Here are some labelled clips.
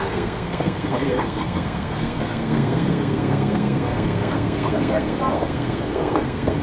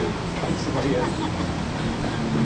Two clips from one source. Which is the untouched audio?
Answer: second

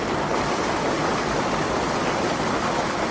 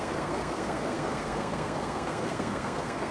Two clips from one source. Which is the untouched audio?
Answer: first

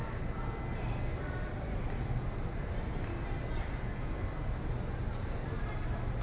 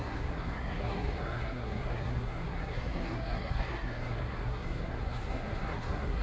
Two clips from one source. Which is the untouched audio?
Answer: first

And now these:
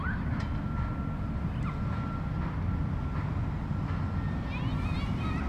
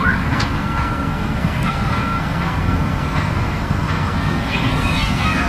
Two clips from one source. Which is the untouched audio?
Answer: first